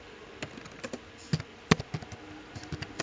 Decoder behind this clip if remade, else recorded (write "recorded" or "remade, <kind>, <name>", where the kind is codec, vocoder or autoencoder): recorded